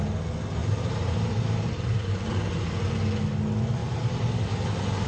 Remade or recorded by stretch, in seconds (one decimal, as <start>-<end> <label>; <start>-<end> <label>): 0.0-0.6 recorded; 0.6-2.7 remade; 2.7-3.8 recorded; 3.8-4.5 remade; 4.5-5.1 recorded